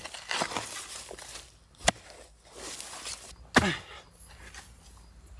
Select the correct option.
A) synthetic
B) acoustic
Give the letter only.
B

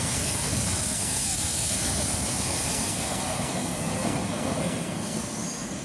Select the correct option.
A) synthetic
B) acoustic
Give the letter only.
A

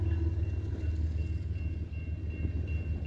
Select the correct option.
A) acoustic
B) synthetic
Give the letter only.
A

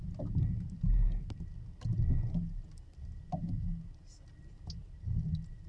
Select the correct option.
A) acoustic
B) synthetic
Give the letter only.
A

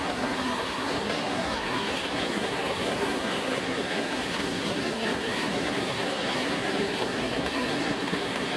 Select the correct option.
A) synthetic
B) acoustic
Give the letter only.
A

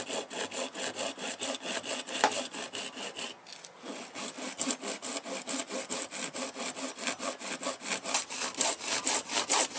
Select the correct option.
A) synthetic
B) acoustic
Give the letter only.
B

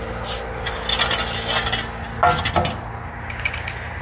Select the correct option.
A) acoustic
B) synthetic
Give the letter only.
A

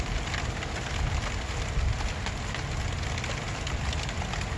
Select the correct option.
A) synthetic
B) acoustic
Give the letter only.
B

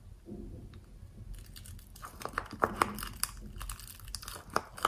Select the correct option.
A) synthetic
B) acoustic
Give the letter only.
B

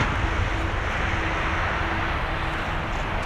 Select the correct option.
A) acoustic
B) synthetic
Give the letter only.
A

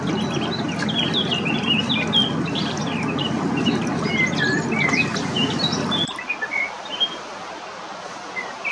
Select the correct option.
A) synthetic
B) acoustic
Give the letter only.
B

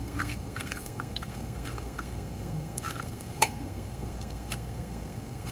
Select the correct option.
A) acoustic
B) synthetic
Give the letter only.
B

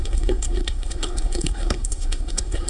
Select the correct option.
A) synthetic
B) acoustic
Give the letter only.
A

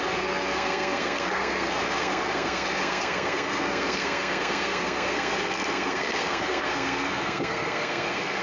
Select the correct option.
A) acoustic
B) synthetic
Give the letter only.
B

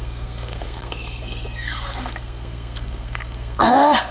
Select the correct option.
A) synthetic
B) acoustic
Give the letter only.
A